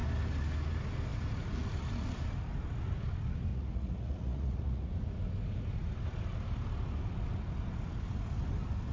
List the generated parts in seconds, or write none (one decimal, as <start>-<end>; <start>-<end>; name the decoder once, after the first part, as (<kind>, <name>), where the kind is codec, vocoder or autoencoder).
3.5-4.9 (vocoder, Vocos)